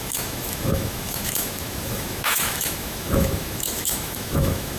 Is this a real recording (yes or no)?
no